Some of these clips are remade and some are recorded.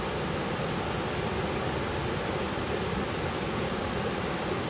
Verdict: recorded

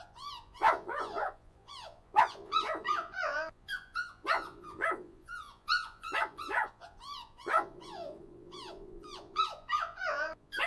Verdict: remade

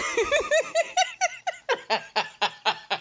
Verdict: recorded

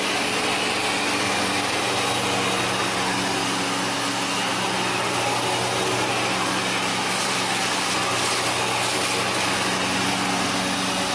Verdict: recorded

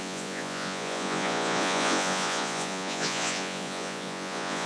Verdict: remade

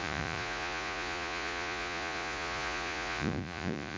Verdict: remade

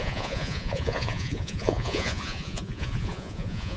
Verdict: remade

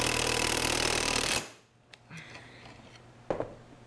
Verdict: recorded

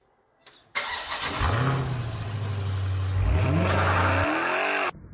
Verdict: recorded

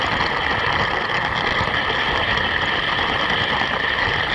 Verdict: recorded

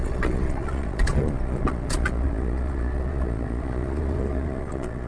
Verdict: remade